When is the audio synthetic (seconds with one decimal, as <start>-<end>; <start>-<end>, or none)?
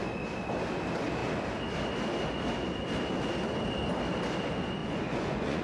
4.8-5.6